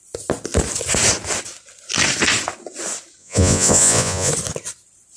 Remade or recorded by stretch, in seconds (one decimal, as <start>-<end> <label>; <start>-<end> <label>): 0.0-3.2 recorded; 3.2-4.3 remade; 4.3-5.2 recorded